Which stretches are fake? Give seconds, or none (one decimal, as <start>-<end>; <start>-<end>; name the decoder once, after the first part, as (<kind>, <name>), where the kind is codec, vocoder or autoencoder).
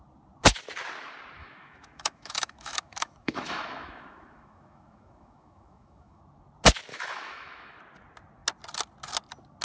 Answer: 1.4-6.2 (autoencoder, DAC-VAE); 6.9-7.8